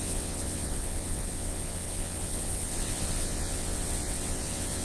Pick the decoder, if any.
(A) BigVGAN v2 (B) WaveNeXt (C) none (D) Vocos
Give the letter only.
B